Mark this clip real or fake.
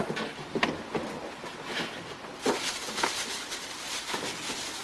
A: real